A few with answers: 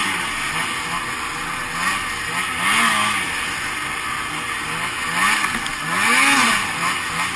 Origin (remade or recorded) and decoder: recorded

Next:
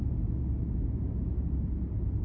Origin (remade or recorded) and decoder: recorded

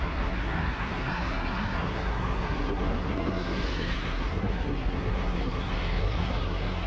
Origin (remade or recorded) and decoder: remade, codec, SNAC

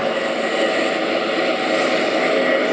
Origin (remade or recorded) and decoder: recorded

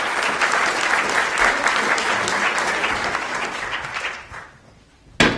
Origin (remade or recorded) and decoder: recorded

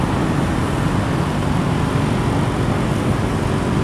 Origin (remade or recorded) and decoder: recorded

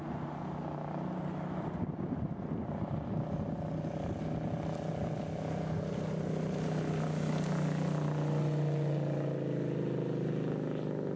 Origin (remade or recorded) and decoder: recorded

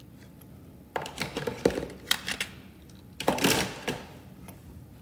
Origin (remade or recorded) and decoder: recorded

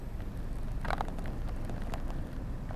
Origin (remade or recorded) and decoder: recorded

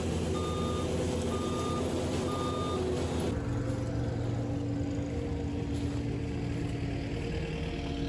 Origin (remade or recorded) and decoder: recorded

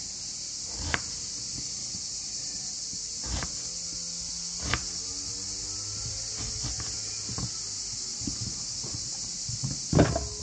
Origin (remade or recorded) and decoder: recorded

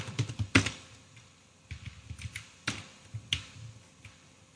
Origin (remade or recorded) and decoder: recorded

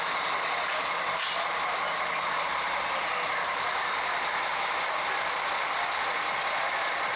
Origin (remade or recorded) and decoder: recorded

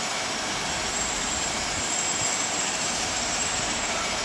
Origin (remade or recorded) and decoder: remade, vocoder, BigVGAN v2